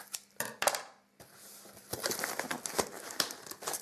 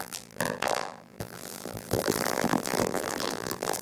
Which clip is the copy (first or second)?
second